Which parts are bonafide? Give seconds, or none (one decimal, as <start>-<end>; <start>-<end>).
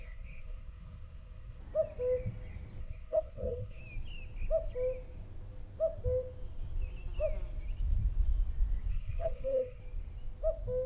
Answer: 1.6-2.8; 3.8-8.9; 9.8-10.9